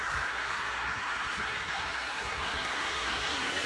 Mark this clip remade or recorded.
remade